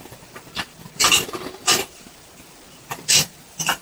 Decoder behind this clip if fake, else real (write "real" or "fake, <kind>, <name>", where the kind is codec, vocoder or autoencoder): fake, vocoder, BigVGAN v2